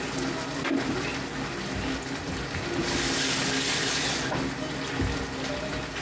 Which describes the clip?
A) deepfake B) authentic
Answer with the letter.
B